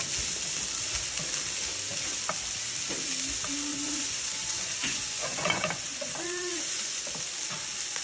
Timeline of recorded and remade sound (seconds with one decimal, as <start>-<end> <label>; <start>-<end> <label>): 0.0-3.7 recorded; 3.7-7.0 remade; 7.0-8.0 recorded